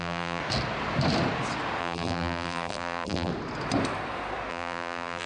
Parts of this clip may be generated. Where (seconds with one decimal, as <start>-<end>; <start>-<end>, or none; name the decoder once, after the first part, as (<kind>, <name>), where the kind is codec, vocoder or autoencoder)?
0.0-0.4 (vocoder, BigVGAN v2); 1.8-3.3; 4.5-5.3